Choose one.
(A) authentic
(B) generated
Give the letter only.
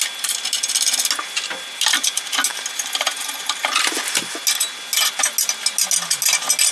A